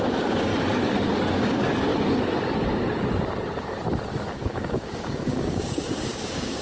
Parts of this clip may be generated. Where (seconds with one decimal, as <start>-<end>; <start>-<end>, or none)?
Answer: 0.0-0.5; 1.3-1.9; 4.3-6.6